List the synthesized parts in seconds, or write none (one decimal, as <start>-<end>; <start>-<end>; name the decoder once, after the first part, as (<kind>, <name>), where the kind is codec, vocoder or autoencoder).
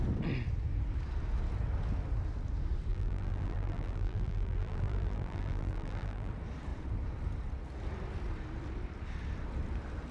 2.9-6.3 (vocoder, BigVGAN v2)